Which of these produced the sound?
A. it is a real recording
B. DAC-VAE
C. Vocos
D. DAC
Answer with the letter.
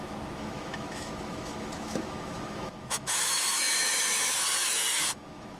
B